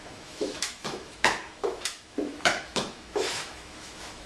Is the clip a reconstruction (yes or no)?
yes